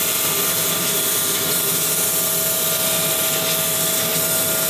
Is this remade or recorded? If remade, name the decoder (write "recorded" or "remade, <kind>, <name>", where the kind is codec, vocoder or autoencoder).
recorded